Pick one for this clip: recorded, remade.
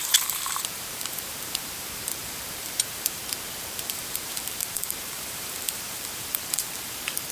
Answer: remade